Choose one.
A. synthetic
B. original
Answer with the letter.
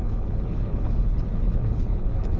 A